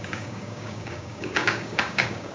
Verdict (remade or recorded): remade